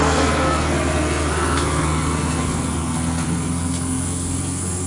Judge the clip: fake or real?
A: fake